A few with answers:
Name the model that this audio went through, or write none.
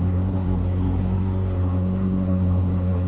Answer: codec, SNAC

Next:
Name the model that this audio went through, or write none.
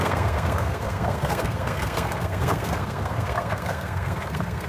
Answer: codec, SNAC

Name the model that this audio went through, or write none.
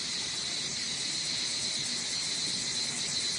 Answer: none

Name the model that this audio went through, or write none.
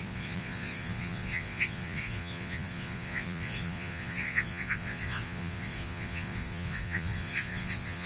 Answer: vocoder, Vocos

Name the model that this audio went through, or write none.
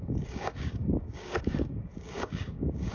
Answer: codec, DAC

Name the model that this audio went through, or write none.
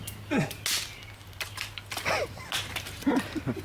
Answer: none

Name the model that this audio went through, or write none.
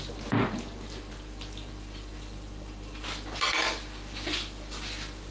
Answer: none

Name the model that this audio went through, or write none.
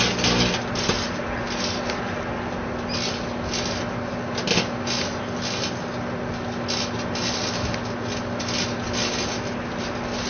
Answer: none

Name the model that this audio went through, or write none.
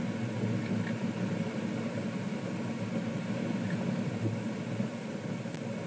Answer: none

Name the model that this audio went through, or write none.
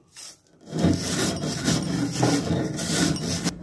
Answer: none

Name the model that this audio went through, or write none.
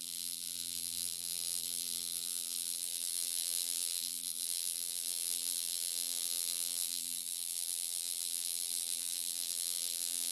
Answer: vocoder, BigVGAN v2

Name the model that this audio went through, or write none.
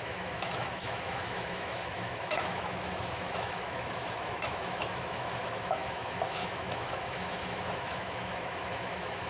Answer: autoencoder, DAC-VAE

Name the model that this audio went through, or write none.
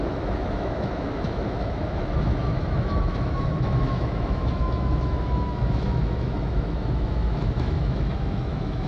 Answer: autoencoder, DAC-VAE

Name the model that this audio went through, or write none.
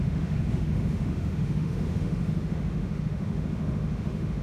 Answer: autoencoder, DAC-VAE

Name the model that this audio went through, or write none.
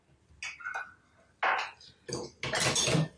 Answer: none